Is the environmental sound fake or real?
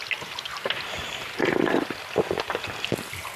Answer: real